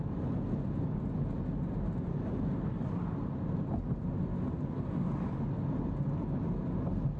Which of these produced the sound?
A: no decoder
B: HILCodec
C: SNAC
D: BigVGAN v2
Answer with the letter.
A